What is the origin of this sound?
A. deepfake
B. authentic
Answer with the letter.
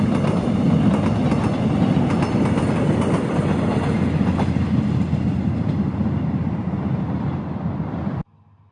B